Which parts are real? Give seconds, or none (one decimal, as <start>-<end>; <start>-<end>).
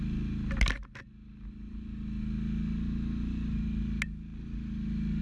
0.0-5.2